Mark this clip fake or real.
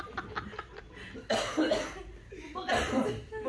real